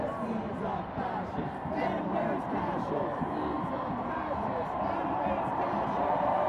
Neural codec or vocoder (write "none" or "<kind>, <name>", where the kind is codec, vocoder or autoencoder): vocoder, BigVGAN v2